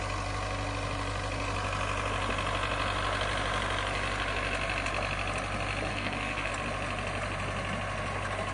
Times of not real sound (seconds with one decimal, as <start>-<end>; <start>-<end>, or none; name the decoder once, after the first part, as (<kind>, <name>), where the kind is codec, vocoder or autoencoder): 5.9-6.5 (codec, SNAC)